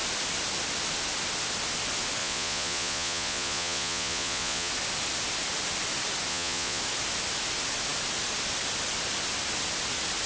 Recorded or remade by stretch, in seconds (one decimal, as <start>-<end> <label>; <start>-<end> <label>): 0.0-2.2 recorded; 2.2-4.7 remade; 4.7-6.3 recorded; 6.3-6.8 remade; 6.8-10.3 recorded